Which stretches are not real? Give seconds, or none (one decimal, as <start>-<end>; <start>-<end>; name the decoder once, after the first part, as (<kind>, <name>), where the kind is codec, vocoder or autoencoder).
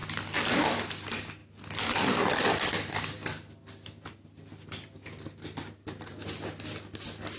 none